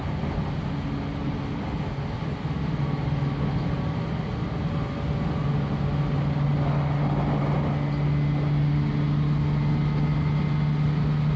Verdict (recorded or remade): recorded